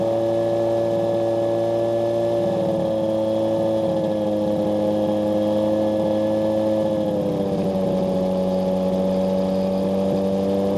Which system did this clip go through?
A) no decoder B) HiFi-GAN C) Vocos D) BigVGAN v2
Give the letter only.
A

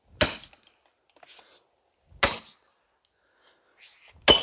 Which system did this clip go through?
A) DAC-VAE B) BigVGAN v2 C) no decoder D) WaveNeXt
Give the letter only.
C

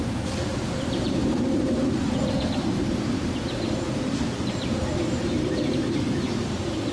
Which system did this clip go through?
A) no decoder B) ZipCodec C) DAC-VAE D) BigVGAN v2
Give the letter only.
D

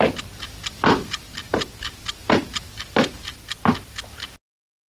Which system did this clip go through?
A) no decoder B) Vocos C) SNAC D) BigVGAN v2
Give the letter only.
A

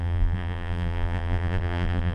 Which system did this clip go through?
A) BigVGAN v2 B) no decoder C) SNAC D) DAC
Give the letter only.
A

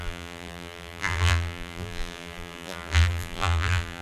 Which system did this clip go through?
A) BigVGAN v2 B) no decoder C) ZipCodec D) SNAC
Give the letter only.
A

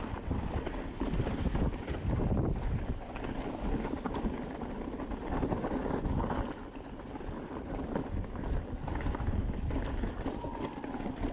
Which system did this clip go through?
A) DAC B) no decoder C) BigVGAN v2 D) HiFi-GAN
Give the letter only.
C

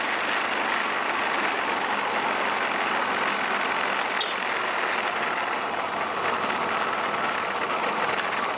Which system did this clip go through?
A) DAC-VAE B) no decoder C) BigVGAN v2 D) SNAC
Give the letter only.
B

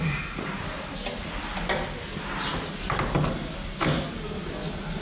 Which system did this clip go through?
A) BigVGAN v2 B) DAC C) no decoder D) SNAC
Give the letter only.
C